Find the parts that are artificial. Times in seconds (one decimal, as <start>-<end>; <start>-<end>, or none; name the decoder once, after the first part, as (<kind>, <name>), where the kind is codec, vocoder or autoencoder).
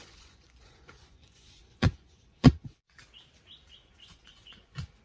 0.0-3.0 (vocoder, Vocos); 3.8-5.0